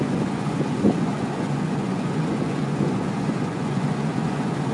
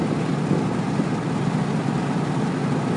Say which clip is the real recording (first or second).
second